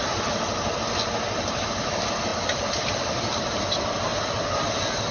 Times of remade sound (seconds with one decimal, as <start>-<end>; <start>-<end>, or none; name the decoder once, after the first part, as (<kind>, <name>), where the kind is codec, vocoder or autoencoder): none